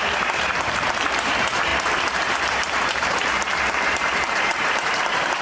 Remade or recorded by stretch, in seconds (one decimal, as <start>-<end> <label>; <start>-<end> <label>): 0.0-5.4 remade